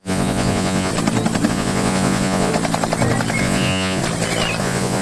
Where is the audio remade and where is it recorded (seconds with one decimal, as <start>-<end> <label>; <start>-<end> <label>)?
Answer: 0.0-0.9 remade; 0.9-1.5 recorded; 1.5-2.5 remade; 2.5-3.4 recorded; 3.4-4.0 remade; 4.0-4.6 recorded; 4.6-5.0 remade